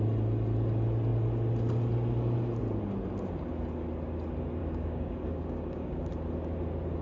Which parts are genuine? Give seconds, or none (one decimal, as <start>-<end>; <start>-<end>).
0.0-4.6; 6.1-7.0